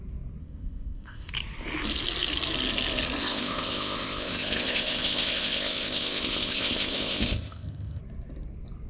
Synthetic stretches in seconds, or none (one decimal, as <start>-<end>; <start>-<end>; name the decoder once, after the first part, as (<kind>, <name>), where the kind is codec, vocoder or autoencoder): 0.4-1.3 (codec, ZipCodec); 3.2-8.0